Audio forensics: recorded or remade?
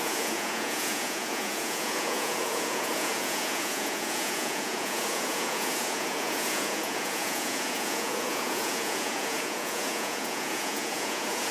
remade